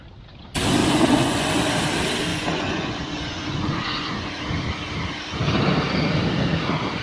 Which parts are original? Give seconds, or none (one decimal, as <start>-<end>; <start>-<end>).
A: 0.0-0.8; 1.6-2.3; 4.4-7.0